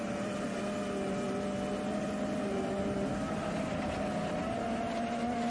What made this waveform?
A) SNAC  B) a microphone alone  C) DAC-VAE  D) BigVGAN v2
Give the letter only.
B